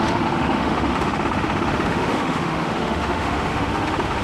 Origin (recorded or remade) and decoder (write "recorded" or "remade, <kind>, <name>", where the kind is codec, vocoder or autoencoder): remade, autoencoder, DAC-VAE